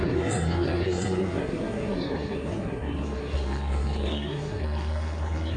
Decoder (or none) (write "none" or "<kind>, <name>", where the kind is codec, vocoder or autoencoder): codec, SNAC